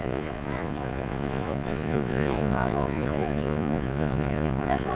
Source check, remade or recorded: remade